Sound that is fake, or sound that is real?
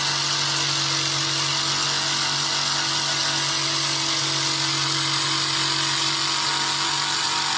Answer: real